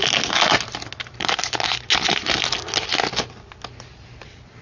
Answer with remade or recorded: recorded